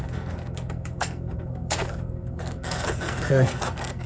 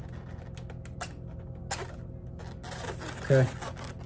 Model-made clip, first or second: first